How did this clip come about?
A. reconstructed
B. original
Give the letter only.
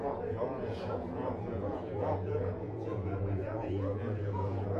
A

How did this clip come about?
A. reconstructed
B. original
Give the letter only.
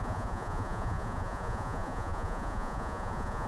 A